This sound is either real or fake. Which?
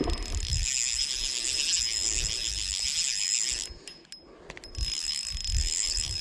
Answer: real